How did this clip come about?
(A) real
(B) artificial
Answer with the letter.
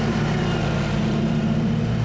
B